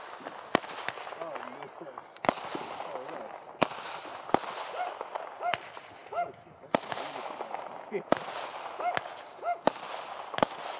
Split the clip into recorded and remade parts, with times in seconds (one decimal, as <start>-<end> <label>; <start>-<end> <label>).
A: 0.0-10.8 recorded